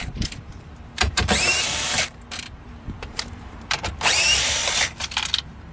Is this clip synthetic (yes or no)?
yes